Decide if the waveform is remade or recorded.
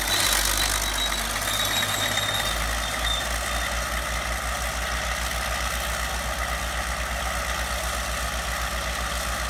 recorded